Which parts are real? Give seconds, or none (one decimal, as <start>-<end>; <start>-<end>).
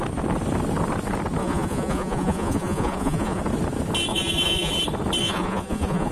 0.0-1.4; 3.4-4.1; 4.7-5.2